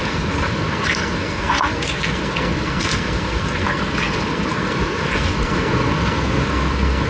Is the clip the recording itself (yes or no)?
no